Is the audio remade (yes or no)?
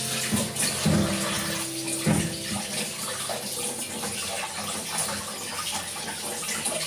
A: no